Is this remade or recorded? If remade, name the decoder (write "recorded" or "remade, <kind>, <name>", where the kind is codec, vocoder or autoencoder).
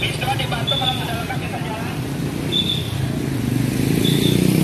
recorded